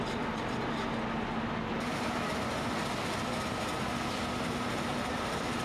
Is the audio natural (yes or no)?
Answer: yes